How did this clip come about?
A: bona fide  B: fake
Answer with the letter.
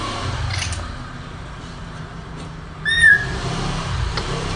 B